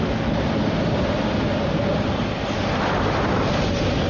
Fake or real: real